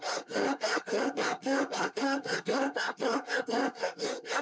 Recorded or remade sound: remade